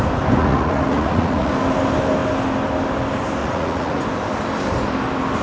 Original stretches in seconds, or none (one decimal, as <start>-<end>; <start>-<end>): 0.0-0.4; 1.5-3.4; 4.0-5.4